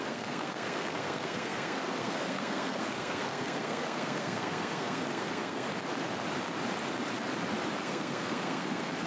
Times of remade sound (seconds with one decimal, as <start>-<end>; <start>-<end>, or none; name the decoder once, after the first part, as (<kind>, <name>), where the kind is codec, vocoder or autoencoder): 0.0-5.7 (codec, SNAC); 7.8-9.1